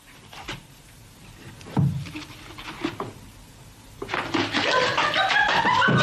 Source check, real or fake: real